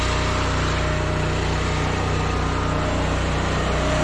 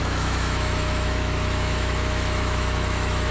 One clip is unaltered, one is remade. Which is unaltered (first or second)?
first